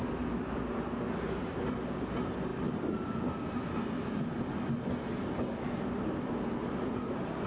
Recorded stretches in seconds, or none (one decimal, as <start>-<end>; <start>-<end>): 0.0-7.5

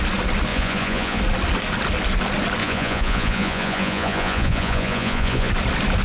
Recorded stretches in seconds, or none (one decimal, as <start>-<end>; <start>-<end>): 0.0-0.5; 1.2-2.6; 5.5-6.0

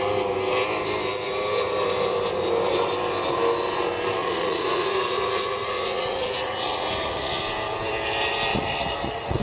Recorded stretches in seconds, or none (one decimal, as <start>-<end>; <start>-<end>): 0.0-4.2; 7.4-8.5

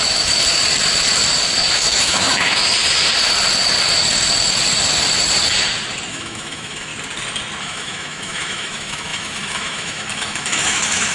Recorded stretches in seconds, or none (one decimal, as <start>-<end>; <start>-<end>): 0.4-1.7; 2.6-6.1; 6.9-7.6